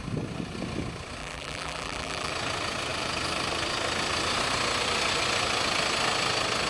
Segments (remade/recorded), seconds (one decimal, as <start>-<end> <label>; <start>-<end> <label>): 0.0-1.2 recorded; 1.2-2.3 remade; 2.3-6.7 recorded

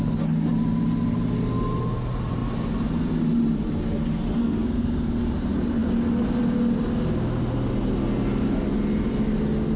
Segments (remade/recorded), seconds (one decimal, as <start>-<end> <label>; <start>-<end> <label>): 0.0-4.4 recorded; 4.4-5.2 remade; 5.2-9.8 recorded

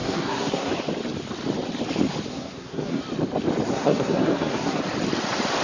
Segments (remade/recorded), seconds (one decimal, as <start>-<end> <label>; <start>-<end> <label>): 0.0-0.7 remade; 0.7-2.3 recorded; 2.3-3.0 remade; 3.0-3.7 recorded; 3.7-4.8 remade; 4.8-5.6 recorded